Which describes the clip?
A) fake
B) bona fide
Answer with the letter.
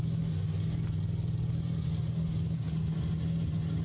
B